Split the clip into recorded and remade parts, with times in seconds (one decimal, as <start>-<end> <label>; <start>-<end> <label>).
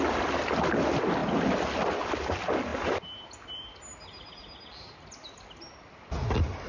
0.0-6.7 recorded